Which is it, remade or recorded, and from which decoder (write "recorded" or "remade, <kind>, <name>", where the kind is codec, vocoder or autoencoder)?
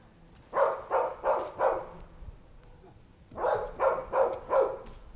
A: recorded